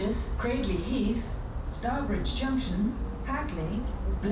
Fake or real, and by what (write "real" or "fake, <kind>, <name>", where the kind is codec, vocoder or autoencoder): real